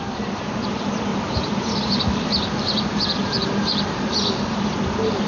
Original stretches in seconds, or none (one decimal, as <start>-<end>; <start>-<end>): 0.0-1.1; 4.3-5.3